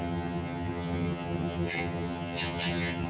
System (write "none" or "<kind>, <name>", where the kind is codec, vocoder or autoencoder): vocoder, HiFi-GAN